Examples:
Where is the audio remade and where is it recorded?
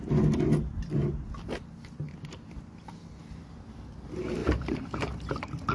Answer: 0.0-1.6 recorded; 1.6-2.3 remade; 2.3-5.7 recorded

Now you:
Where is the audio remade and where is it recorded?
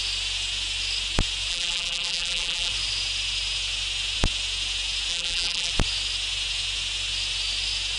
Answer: 0.0-1.5 recorded; 1.5-2.7 remade; 2.7-5.1 recorded; 5.1-5.7 remade; 5.7-8.0 recorded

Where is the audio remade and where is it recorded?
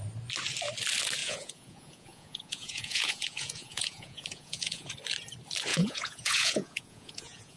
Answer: 0.0-1.2 recorded; 1.2-4.9 remade; 4.9-5.7 recorded; 5.7-7.6 remade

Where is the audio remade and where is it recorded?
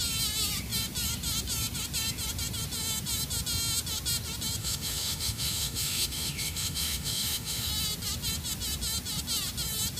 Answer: 0.0-4.6 recorded; 4.6-7.7 remade; 7.7-10.0 recorded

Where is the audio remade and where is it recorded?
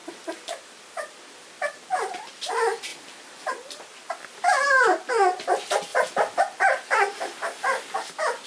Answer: 0.0-1.1 remade; 1.1-2.9 recorded; 2.9-3.5 remade; 3.5-8.5 recorded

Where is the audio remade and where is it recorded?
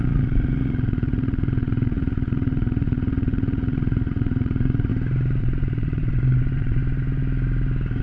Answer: 0.0-4.9 remade; 4.9-5.4 recorded; 5.4-6.8 remade; 6.8-8.0 recorded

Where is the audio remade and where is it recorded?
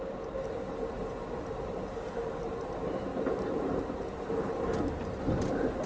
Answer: 0.0-3.1 recorded; 3.1-3.9 remade; 3.9-5.9 recorded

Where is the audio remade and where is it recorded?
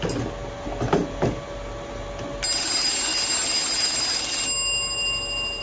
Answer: 0.0-5.6 recorded